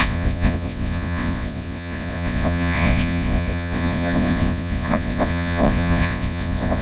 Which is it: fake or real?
fake